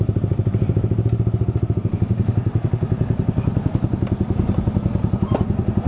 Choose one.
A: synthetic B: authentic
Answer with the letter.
B